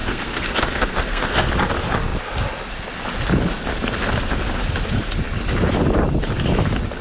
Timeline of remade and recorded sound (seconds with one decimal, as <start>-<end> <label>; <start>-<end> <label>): 0.0-1.5 remade; 1.5-7.0 recorded